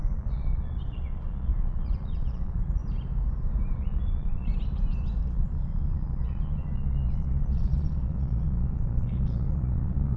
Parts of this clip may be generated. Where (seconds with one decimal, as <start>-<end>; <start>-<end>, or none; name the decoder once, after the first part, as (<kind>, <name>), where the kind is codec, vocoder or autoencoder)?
0.0-2.8 (vocoder, Vocos); 3.8-4.5; 5.2-10.2